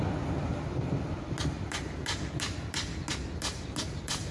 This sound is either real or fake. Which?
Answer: real